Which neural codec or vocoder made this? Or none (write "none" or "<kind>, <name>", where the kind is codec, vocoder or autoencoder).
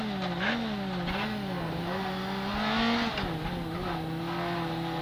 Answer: none